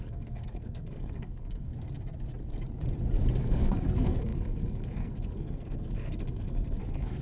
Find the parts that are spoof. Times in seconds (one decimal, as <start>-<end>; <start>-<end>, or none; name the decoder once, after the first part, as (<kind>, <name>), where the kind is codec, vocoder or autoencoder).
0.0-1.7 (codec, SNAC); 3.4-7.2